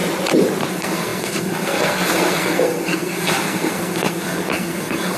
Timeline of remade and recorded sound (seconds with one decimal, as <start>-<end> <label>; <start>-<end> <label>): 0.0-0.7 recorded; 0.7-5.2 remade

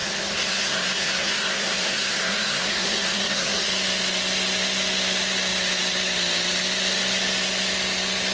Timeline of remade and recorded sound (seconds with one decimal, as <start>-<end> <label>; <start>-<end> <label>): 0.0-3.7 remade; 3.7-8.3 recorded

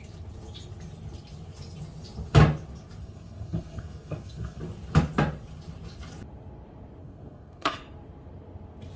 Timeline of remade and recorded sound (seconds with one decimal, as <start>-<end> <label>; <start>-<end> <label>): 0.0-3.0 recorded; 3.0-4.6 remade; 4.6-7.0 recorded; 7.0-7.8 remade; 7.8-9.0 recorded

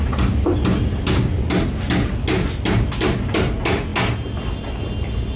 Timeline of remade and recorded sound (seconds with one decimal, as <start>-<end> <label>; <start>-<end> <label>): 0.0-5.4 recorded